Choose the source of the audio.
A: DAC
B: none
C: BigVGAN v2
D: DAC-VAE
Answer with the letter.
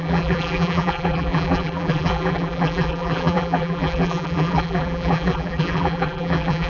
C